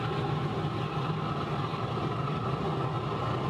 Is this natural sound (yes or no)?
yes